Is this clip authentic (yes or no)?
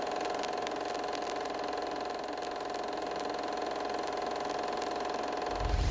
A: yes